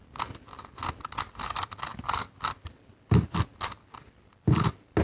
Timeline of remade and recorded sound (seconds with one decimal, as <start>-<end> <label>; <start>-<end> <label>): 0.0-5.0 recorded